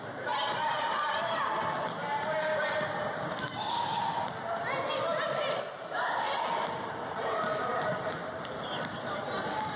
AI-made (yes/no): yes